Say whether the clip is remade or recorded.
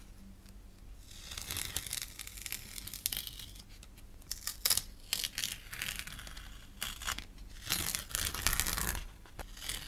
recorded